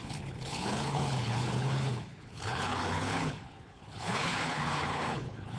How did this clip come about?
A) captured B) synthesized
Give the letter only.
B